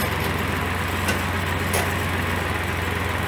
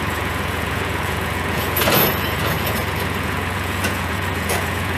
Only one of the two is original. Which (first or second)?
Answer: first